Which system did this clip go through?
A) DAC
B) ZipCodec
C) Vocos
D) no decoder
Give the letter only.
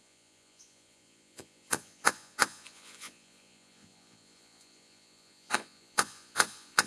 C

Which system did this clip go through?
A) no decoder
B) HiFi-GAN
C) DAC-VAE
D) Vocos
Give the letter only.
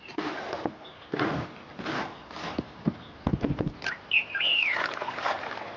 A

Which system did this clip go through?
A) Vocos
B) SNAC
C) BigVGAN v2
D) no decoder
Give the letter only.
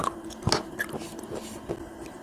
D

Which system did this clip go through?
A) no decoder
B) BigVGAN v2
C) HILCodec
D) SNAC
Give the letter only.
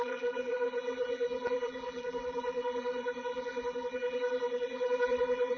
B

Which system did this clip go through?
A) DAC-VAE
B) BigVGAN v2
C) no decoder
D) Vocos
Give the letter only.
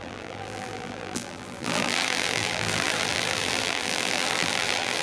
B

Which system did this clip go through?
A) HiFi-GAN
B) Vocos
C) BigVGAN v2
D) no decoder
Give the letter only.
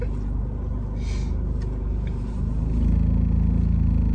D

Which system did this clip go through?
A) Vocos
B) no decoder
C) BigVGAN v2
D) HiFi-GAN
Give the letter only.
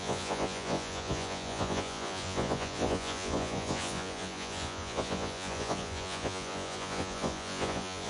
A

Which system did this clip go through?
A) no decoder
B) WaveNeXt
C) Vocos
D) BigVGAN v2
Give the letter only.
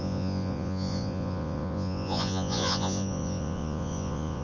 C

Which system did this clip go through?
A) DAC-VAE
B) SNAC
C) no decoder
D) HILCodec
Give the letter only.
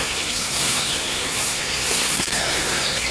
B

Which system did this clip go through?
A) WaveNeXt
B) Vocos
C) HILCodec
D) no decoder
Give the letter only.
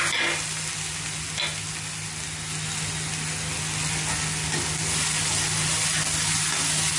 D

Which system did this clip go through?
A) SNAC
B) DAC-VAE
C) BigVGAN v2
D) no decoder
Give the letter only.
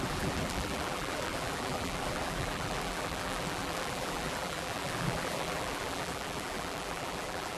C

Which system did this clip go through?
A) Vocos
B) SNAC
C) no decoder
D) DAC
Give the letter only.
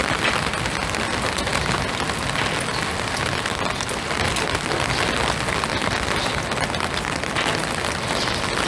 C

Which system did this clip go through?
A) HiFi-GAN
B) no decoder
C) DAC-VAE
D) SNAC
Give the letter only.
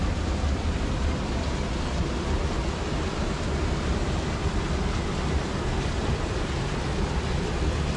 B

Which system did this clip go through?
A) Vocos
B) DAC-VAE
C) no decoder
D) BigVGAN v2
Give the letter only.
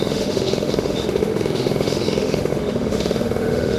B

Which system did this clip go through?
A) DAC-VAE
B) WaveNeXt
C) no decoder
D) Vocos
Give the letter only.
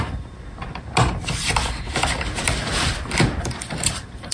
C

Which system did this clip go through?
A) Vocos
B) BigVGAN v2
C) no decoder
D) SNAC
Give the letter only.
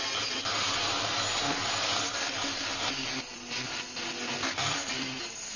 C